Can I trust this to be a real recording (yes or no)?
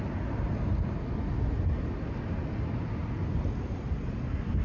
yes